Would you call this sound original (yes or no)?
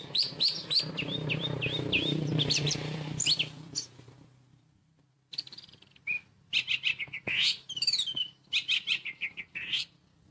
no